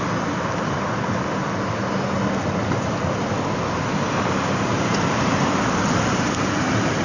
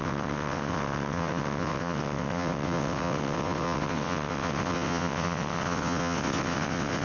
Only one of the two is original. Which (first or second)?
first